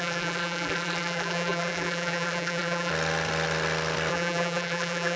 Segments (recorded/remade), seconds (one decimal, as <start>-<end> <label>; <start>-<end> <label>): 0.0-2.9 remade; 2.9-4.1 recorded; 4.1-5.2 remade